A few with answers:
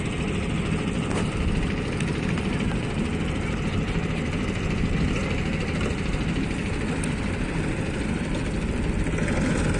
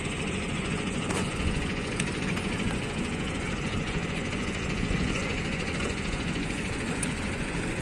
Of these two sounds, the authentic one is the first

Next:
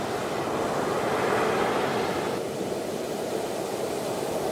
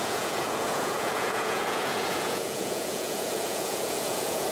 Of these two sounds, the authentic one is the first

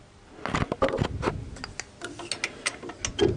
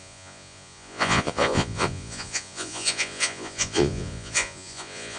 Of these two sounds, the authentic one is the first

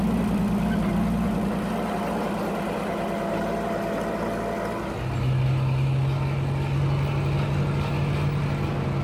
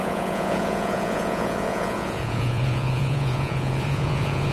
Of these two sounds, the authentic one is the first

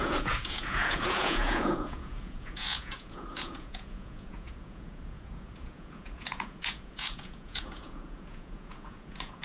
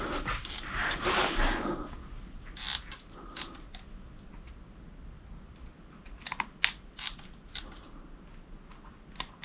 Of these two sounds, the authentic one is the second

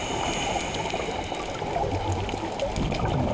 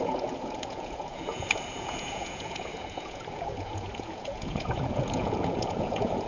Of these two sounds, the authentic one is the first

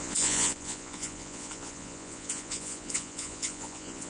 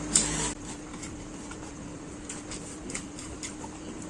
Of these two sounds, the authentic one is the second